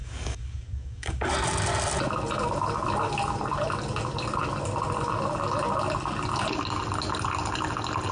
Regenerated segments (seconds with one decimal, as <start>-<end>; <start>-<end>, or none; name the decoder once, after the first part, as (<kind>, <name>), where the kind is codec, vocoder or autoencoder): 0.0-1.3 (codec, DAC)